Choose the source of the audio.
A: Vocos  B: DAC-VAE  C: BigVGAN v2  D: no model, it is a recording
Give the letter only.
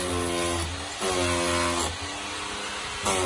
D